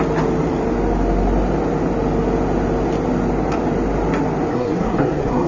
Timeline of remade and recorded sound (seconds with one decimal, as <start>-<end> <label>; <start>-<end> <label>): 0.0-4.5 recorded; 4.5-5.5 remade